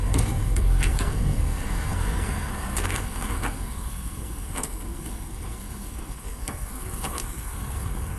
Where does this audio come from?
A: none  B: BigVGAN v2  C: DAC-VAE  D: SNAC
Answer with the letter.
D